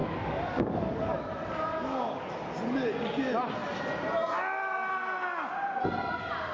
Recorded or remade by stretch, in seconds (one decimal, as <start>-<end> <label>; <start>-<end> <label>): 0.0-1.1 remade; 1.1-1.7 recorded; 1.7-2.3 remade; 2.3-6.5 recorded